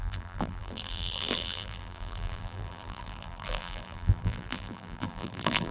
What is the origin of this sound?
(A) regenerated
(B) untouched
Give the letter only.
A